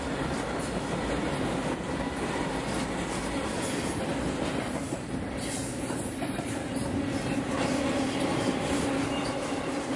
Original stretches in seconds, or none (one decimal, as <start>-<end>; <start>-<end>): 0.0-10.0

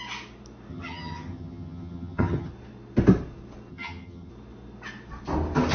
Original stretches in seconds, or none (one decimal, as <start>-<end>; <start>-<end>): 0.0-0.7; 2.5-3.7; 4.3-5.7

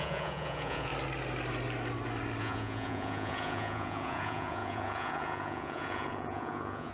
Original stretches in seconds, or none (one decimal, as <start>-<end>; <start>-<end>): 0.9-2.4

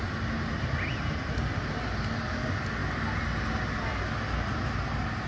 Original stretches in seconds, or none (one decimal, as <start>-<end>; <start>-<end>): 0.0-5.3

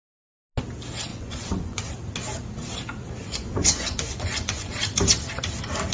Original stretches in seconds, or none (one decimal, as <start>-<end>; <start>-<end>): 0.0-1.1; 1.8-3.2; 4.7-5.9

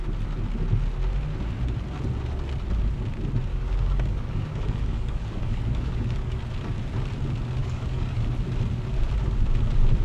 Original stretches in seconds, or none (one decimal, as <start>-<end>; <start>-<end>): 0.0-3.5; 6.4-7.6; 8.2-10.0

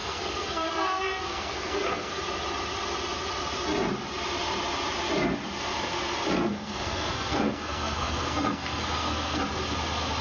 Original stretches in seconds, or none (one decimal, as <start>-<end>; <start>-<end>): 2.2-6.5; 9.4-10.2